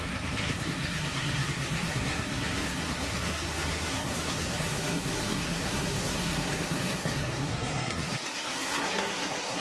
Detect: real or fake fake